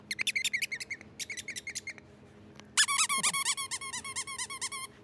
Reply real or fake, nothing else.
real